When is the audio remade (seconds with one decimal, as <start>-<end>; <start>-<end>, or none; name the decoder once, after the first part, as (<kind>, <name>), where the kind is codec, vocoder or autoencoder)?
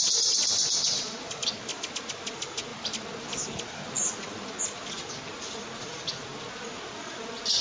none